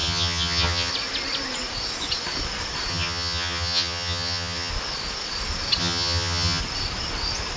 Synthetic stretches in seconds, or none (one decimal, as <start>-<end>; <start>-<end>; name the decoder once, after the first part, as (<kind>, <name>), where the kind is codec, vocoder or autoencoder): 0.0-0.9 (vocoder, HiFi-GAN); 2.9-4.7; 5.8-6.6